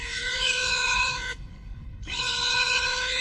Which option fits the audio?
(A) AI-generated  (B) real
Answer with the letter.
A